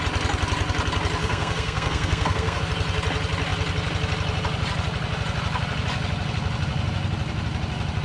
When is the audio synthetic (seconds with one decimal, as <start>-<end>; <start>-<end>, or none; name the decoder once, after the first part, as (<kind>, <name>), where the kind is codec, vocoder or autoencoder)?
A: 1.2-2.6 (codec, SNAC)